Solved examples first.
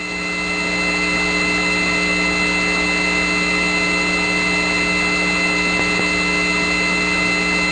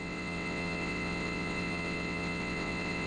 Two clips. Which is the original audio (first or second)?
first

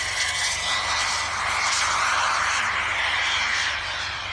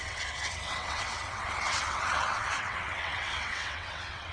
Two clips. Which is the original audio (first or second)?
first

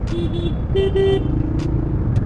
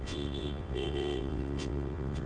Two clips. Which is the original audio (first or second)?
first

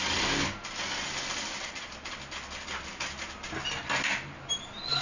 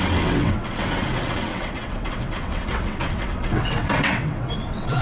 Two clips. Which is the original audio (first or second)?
first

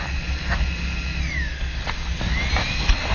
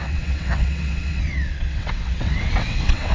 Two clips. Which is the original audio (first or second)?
first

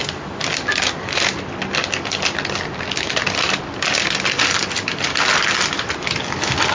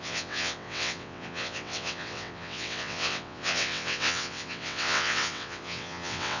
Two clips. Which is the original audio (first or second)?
first